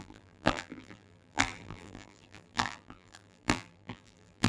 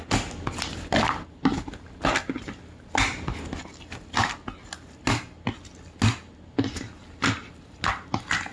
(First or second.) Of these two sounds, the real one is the second